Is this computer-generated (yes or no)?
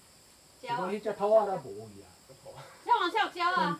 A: yes